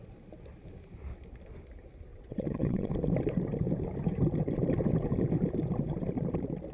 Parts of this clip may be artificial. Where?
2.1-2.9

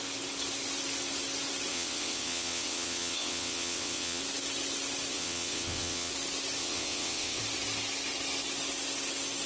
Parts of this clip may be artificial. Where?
1.7-4.2; 5.1-6.1; 6.6-7.4

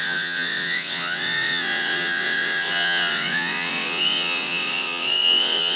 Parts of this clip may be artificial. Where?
0.0-5.8

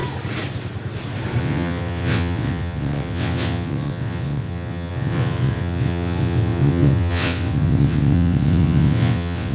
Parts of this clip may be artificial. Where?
1.4-9.5

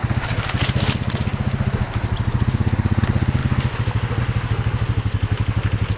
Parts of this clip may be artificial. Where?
none